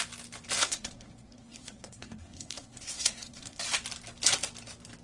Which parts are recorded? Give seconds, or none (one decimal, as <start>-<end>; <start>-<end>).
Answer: 0.0-0.6; 3.6-5.0